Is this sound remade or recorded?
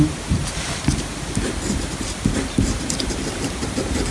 recorded